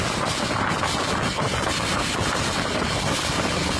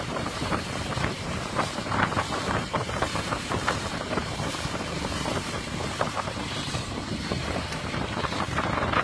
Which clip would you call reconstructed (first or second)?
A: second